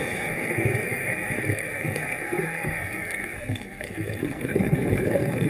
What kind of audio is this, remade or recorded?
remade